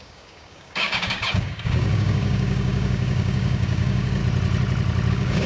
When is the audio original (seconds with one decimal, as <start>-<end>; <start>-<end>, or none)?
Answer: 4.2-5.1